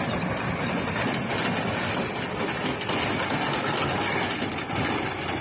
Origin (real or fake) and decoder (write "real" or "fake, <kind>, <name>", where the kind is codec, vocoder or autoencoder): real